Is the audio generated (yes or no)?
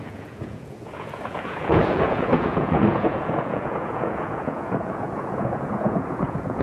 yes